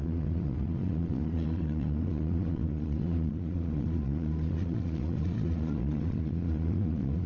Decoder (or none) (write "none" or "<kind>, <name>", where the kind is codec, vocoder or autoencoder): vocoder, Vocos